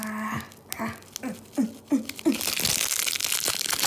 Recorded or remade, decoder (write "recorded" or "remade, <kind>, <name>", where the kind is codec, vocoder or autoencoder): recorded